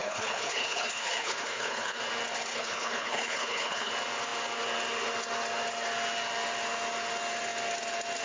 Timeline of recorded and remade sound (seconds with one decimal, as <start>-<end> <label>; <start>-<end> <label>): 0.0-2.0 remade; 2.0-2.5 recorded; 2.5-3.9 remade; 3.9-8.2 recorded